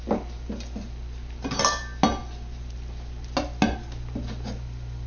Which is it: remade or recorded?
recorded